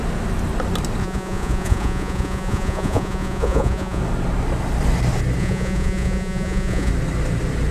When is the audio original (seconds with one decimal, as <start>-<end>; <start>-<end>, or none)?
0.0-1.0; 4.0-5.4; 6.9-7.7